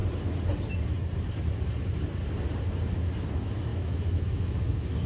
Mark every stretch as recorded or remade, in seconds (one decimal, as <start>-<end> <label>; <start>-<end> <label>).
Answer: 0.0-3.7 recorded; 3.7-5.1 remade